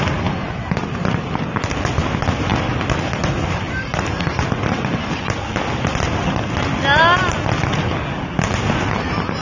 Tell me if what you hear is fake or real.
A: real